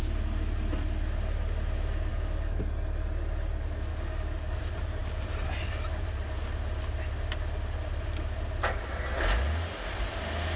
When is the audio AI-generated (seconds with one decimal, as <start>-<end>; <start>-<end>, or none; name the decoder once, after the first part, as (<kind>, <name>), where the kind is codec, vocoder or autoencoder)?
2.1-2.6 (codec, DAC); 3.9-4.6